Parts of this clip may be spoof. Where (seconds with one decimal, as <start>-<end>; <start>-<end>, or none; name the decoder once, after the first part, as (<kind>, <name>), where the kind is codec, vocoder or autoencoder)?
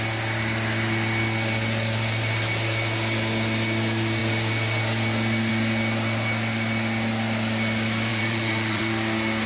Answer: 8.1-8.8 (vocoder, Vocos)